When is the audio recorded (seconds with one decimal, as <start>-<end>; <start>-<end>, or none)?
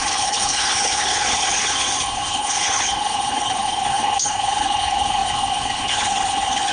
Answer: none